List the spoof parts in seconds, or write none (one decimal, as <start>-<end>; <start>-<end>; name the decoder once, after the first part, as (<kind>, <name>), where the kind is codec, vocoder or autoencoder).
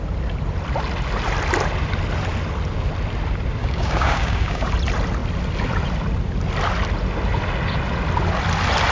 3.6-4.7 (codec, DAC)